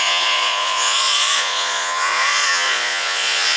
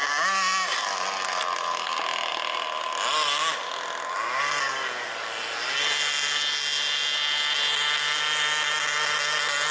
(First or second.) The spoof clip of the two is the first